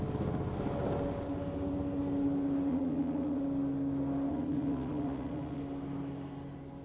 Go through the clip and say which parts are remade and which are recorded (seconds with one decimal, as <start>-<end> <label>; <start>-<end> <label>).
0.0-2.7 recorded; 2.7-3.4 remade; 3.4-4.3 recorded; 4.3-5.6 remade; 5.6-6.8 recorded